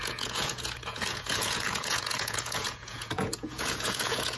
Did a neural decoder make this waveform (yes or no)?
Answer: yes